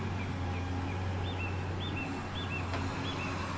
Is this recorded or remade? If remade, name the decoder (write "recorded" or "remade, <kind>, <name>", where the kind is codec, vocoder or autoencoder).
recorded